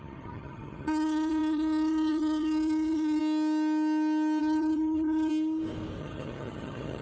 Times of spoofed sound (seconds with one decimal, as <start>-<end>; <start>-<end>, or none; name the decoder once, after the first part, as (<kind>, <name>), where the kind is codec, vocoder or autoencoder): 0.0-3.2 (vocoder, HiFi-GAN); 4.4-5.3; 6.0-7.0